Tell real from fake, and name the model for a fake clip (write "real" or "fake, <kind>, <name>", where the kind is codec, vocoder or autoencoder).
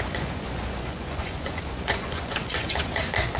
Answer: fake, vocoder, Vocos